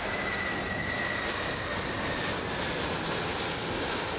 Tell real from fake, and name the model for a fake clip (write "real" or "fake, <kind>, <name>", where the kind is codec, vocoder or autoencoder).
real